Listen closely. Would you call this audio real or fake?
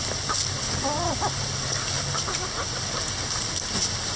real